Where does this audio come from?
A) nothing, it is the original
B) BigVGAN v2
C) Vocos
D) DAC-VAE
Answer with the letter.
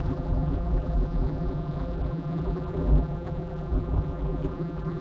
B